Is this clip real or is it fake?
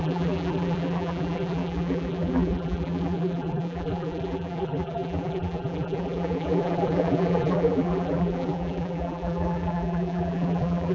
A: fake